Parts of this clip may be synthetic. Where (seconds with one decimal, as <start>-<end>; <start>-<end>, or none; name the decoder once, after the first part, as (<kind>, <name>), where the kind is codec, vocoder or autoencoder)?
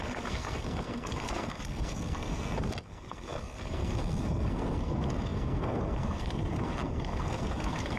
0.0-8.0 (codec, SNAC)